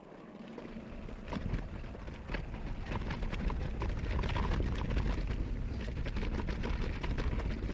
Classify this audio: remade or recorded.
recorded